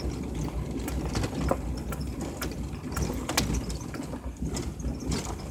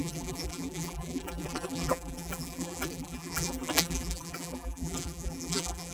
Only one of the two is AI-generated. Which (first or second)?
second